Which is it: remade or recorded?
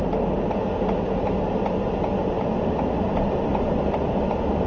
recorded